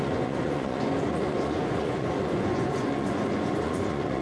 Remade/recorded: remade